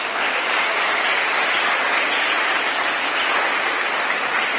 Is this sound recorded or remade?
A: recorded